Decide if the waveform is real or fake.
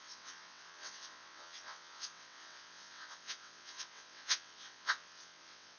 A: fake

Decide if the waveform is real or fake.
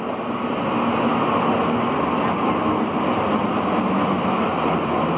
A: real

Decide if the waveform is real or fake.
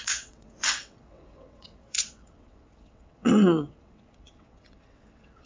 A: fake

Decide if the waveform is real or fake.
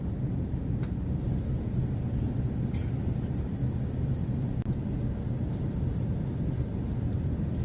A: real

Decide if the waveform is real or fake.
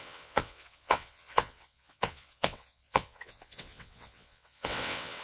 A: fake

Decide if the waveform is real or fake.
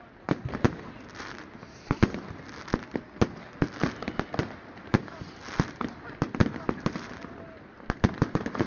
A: real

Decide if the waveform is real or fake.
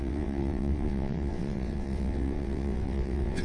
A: fake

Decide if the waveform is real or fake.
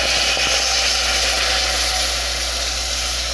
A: real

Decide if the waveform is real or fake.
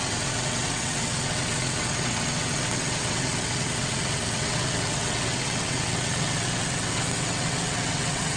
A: fake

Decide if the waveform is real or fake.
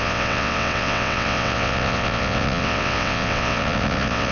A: fake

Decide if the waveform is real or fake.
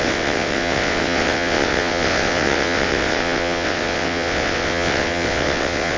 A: fake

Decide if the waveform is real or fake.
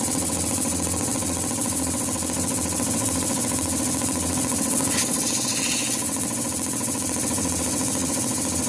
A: fake